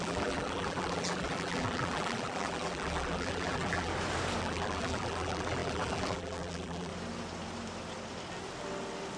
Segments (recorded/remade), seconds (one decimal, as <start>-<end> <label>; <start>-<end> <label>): 0.0-3.9 remade; 3.9-4.4 recorded; 4.4-6.9 remade; 6.9-9.2 recorded